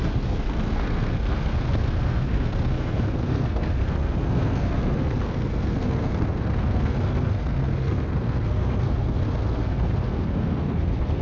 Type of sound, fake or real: fake